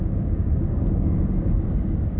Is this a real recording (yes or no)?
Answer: no